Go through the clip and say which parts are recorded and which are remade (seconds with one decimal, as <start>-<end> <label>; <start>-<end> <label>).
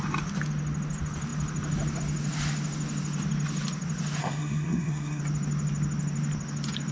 0.0-4.2 recorded; 4.2-5.2 remade; 5.2-6.9 recorded